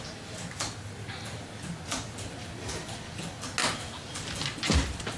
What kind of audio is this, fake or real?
real